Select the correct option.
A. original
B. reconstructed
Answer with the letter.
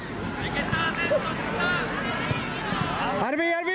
A